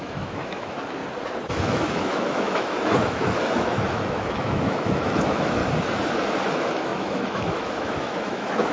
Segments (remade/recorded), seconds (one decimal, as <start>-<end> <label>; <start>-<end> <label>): 0.0-1.0 remade; 1.0-1.5 recorded; 1.5-5.6 remade; 5.6-6.5 recorded; 6.5-8.7 remade